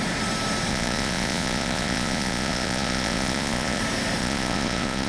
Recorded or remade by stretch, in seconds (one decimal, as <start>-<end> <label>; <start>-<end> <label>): 0.0-0.7 recorded; 0.7-3.8 remade; 3.8-4.2 recorded; 4.2-5.1 remade